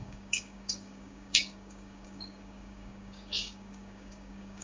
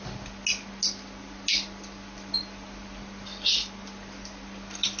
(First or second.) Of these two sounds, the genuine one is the second